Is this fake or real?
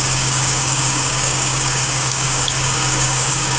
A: fake